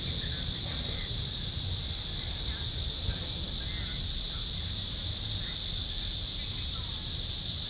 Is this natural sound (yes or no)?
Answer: yes